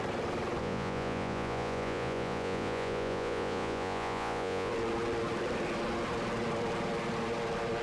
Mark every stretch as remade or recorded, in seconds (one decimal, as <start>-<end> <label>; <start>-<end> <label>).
0.0-0.6 recorded; 0.6-4.7 remade; 4.7-7.8 recorded